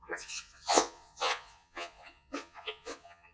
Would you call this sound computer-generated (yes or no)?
yes